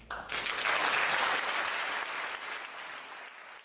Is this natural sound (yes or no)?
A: yes